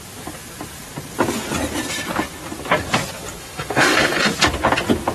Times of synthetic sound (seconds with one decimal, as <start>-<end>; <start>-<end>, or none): 3.4-4.3